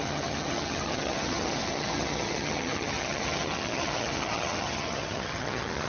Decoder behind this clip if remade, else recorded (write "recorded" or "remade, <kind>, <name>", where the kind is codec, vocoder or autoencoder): remade, vocoder, HiFi-GAN